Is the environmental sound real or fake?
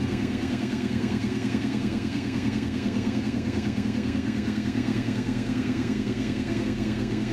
fake